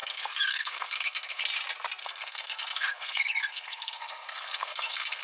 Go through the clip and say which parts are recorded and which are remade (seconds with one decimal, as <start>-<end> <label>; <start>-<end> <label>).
0.0-1.4 remade; 1.4-2.0 recorded; 2.0-5.2 remade